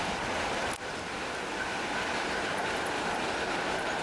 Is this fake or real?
real